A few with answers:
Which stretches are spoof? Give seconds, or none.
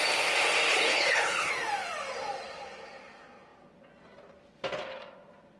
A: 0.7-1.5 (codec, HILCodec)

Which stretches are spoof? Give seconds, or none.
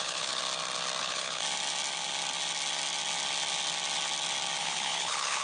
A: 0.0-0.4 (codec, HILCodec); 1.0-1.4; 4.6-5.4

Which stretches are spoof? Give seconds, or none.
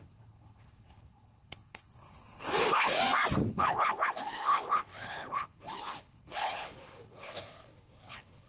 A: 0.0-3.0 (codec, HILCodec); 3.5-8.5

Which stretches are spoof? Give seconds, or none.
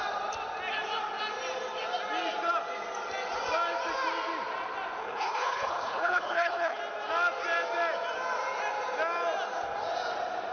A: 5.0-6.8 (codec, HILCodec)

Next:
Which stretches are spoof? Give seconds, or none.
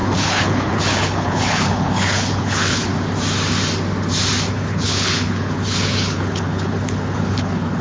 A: 0.0-2.9 (codec, HILCodec); 4.5-7.8